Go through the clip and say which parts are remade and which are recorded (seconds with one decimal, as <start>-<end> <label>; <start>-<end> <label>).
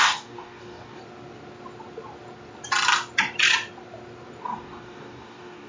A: 0.0-1.0 remade; 1.0-4.4 recorded; 4.4-5.7 remade